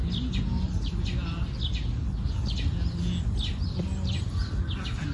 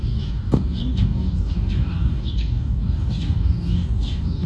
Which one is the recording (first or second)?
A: first